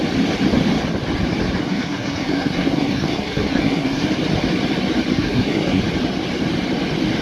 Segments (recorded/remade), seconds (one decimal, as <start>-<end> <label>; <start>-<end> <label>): 0.0-1.6 recorded; 1.6-4.0 remade; 4.0-5.1 recorded; 5.1-5.8 remade; 5.8-7.2 recorded